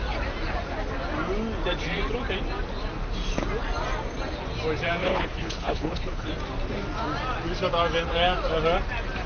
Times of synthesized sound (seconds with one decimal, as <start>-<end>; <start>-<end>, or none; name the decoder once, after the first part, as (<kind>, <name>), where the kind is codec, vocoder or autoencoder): 5.0-6.3 (codec, HILCodec)